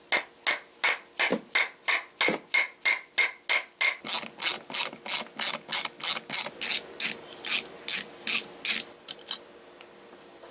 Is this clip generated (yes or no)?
no